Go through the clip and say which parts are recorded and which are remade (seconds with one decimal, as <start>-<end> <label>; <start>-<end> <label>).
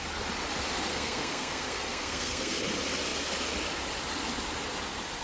0.0-0.9 recorded; 0.9-2.6 remade; 2.6-5.2 recorded